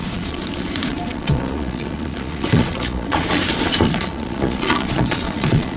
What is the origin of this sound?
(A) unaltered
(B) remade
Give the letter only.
B